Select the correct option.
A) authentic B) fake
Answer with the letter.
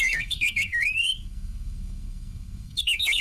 B